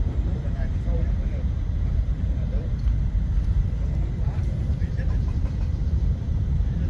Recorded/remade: remade